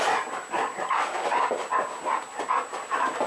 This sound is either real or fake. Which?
real